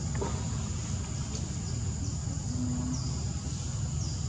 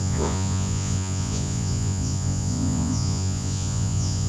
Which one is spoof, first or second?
second